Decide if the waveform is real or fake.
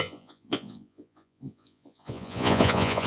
fake